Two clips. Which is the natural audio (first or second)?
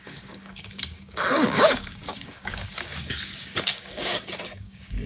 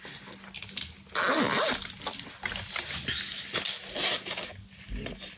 second